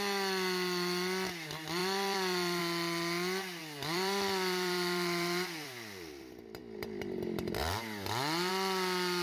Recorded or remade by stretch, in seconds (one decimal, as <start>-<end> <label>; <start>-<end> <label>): 0.0-1.8 recorded; 1.8-2.6 remade; 2.6-3.6 recorded; 3.6-6.1 remade; 6.1-9.2 recorded